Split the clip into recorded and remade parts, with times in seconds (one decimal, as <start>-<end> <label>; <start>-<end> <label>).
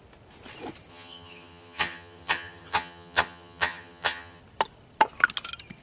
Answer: 0.0-0.9 recorded; 0.9-4.4 remade; 4.4-5.8 recorded